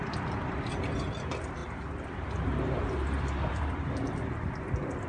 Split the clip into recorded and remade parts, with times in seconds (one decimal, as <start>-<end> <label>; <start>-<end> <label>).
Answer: 0.0-1.6 recorded; 1.6-5.1 remade